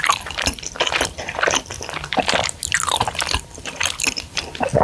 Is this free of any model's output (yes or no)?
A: no